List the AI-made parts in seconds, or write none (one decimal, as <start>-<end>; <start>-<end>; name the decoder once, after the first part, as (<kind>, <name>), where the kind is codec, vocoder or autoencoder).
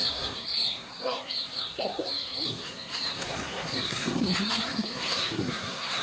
0.0-6.0 (codec, SNAC)